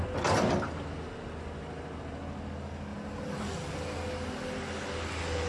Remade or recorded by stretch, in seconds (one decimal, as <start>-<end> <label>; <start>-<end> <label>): 0.0-5.5 recorded